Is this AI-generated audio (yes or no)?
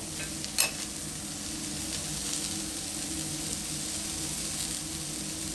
no